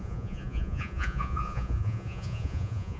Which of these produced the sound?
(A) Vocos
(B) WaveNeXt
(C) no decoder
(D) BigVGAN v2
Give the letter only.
A